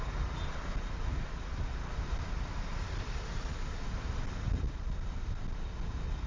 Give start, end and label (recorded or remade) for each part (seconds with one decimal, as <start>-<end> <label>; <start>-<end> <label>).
0.0-1.1 recorded; 1.1-1.7 remade; 1.7-2.7 recorded; 2.7-5.4 remade; 5.4-6.3 recorded

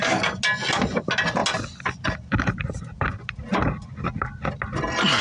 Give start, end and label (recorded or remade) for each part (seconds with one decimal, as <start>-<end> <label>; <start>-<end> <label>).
0.0-5.2 recorded

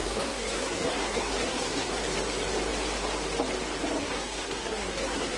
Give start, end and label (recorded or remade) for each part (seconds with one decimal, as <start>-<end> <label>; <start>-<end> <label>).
0.0-1.9 remade; 1.9-4.0 recorded; 4.0-5.4 remade

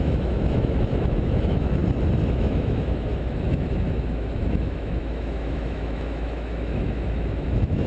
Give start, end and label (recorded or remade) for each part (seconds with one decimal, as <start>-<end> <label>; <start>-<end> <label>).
0.0-1.8 remade; 1.8-2.3 recorded; 2.3-7.9 remade